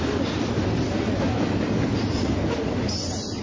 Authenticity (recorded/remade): recorded